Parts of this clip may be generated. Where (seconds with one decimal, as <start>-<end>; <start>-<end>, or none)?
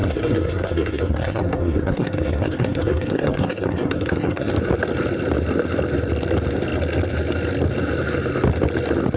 0.0-4.5